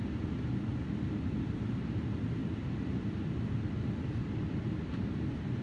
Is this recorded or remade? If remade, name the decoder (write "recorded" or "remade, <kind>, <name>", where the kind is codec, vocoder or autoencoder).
recorded